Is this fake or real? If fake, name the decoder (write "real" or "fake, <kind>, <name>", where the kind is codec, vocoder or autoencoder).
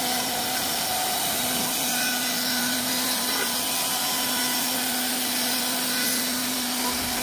real